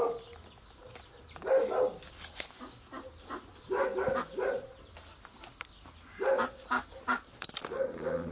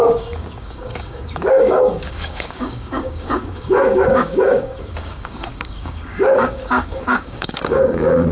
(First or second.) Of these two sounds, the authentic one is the first